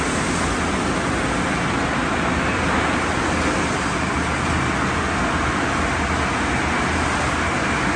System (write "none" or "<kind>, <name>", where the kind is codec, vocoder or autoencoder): none